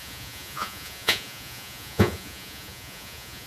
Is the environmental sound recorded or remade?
remade